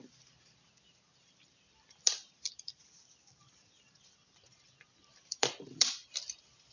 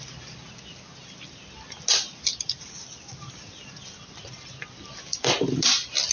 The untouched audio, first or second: second